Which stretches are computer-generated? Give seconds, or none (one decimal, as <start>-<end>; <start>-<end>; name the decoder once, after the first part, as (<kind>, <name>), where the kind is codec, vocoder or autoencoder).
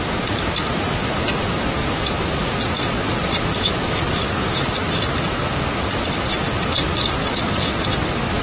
1.8-6.4 (vocoder, BigVGAN v2)